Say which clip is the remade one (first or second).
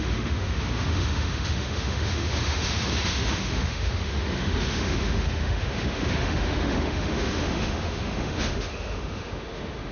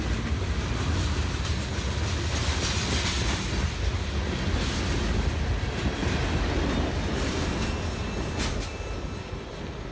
first